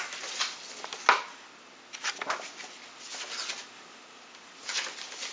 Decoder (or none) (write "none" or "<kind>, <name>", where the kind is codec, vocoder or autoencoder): none